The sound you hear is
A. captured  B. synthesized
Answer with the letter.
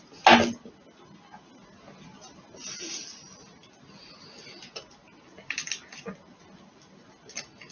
A